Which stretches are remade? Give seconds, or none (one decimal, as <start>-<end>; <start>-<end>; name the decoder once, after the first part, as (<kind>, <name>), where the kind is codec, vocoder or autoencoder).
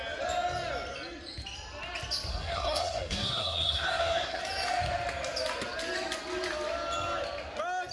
2.3-4.4 (codec, SNAC)